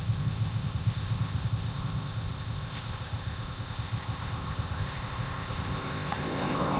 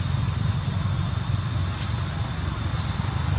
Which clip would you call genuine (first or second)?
second